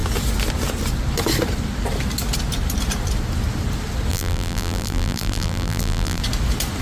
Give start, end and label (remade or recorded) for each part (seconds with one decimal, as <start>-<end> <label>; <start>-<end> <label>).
0.0-4.1 recorded; 4.1-6.2 remade; 6.2-6.8 recorded